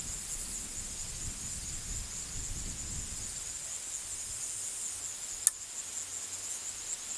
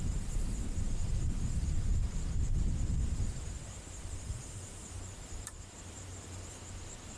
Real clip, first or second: first